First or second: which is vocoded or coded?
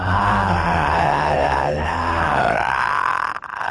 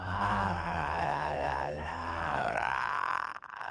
second